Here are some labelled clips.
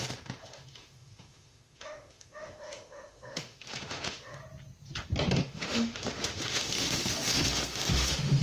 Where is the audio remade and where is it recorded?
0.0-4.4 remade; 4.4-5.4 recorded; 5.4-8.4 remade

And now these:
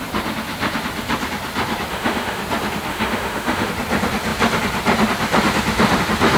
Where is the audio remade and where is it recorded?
0.0-1.9 recorded; 1.9-2.4 remade; 2.4-2.9 recorded; 2.9-3.7 remade; 3.7-6.4 recorded

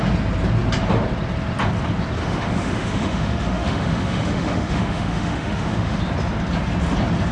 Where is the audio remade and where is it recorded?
0.0-2.2 recorded; 2.2-6.0 remade; 6.0-7.3 recorded